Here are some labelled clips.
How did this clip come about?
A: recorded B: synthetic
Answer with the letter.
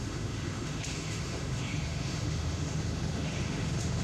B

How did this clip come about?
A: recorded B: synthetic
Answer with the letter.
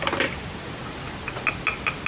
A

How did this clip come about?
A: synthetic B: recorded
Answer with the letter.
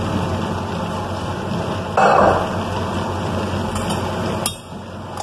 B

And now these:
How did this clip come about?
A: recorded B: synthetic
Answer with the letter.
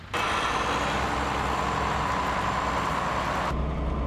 A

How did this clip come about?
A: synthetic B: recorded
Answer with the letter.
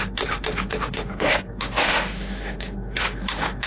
A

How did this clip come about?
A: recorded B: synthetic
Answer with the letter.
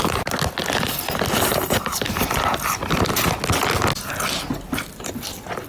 A